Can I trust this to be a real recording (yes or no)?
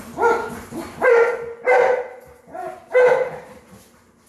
yes